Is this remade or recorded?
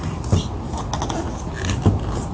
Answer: recorded